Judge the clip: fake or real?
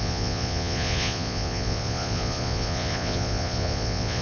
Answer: fake